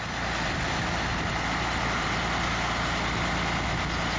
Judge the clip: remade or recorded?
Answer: recorded